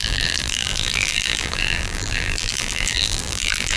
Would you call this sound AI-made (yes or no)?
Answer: yes